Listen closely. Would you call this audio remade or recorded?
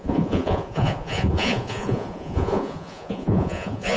remade